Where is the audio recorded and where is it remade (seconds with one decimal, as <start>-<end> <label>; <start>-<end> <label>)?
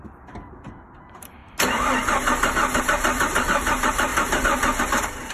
0.0-1.4 remade; 1.4-2.8 recorded; 2.8-4.1 remade; 4.1-4.8 recorded; 4.8-5.3 remade